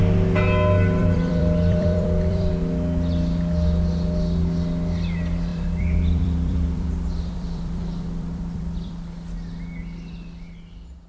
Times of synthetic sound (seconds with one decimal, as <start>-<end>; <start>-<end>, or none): 1.0-2.5; 5.5-8.9